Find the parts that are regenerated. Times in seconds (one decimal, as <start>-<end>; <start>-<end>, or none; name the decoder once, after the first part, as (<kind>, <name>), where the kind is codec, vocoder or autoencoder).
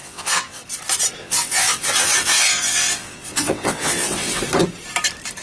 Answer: 0.0-0.6 (vocoder, WaveNeXt); 1.2-4.4